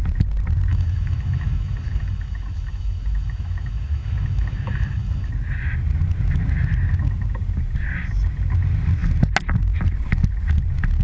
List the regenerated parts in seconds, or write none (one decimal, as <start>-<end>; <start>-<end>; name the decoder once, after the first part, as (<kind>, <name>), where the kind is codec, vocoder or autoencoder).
0.7-5.3 (autoencoder, DAC-VAE)